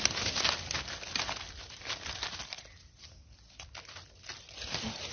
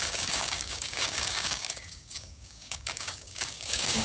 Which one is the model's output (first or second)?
second